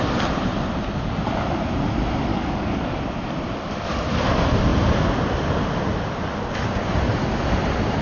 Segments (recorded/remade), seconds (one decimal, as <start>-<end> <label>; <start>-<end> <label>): 0.0-2.3 recorded; 2.3-3.0 remade; 3.0-8.0 recorded